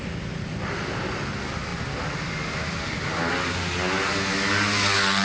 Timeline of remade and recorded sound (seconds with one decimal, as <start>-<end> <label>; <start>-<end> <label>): 0.0-5.2 recorded